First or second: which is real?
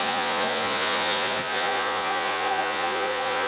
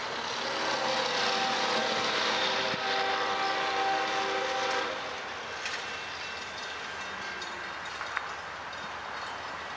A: second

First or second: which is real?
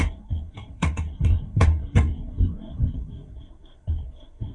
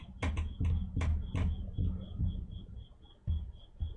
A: second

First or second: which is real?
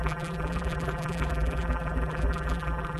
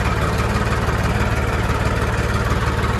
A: second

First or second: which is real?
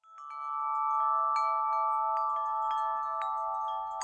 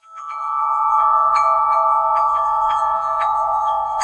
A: first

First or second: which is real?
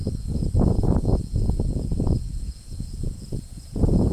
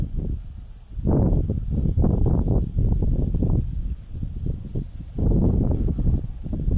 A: second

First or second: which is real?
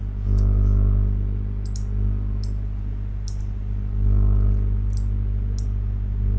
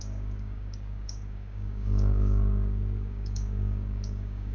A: first